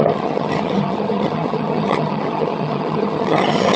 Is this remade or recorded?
remade